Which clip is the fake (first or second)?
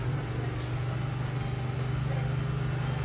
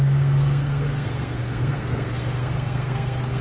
second